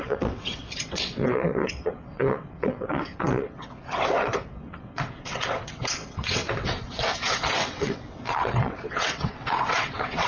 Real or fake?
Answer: fake